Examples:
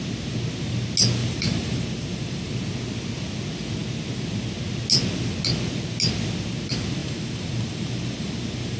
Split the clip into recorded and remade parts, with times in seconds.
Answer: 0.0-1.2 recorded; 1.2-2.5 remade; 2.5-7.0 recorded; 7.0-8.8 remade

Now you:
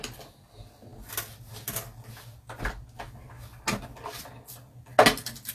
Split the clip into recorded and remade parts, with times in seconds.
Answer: 0.0-5.5 recorded

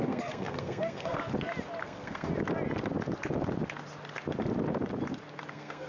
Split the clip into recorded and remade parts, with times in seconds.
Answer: 0.0-1.2 remade; 1.2-1.8 recorded; 1.8-2.3 remade; 2.3-5.5 recorded; 5.5-5.9 remade